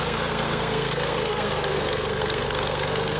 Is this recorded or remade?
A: remade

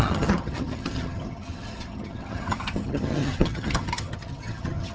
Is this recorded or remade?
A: remade